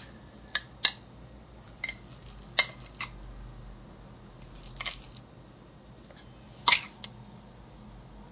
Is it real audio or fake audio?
real